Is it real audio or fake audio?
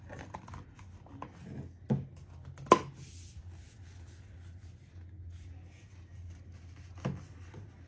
real